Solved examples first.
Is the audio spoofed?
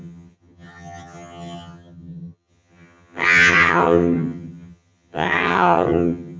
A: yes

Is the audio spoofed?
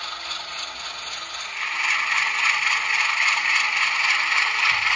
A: no